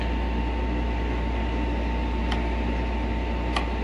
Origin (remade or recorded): recorded